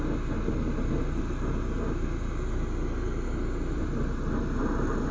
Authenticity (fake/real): real